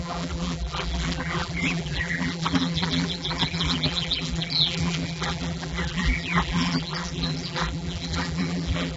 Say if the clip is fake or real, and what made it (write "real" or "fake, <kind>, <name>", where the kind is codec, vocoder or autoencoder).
fake, vocoder, BigVGAN v2